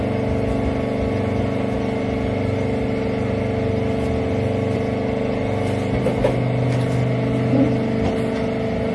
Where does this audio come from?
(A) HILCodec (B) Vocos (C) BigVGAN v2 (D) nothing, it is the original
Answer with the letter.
D